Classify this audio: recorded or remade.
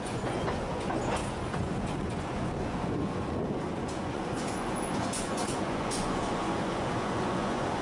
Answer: remade